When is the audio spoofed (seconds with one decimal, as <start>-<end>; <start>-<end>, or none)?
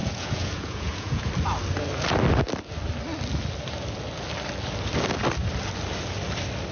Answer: 0.0-1.3